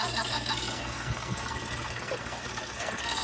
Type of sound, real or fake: fake